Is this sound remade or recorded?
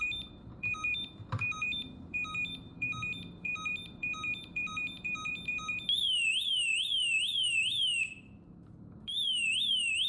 remade